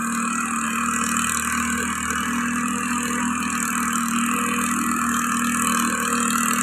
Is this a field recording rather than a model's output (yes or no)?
yes